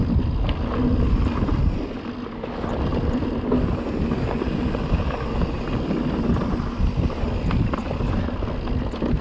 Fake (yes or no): no